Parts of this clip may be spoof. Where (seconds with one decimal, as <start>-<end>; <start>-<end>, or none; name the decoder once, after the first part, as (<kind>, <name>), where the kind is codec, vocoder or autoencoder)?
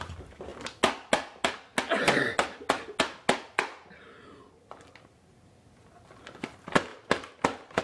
6.9-7.8 (vocoder, BigVGAN v2)